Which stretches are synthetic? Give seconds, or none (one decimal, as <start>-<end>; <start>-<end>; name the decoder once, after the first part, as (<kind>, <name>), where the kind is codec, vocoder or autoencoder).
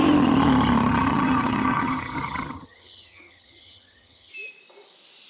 1.1-4.3 (vocoder, HiFi-GAN)